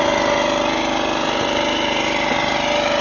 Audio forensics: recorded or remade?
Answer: recorded